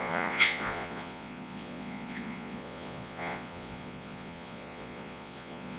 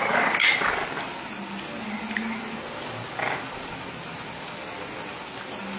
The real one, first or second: second